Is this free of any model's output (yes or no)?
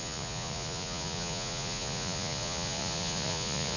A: no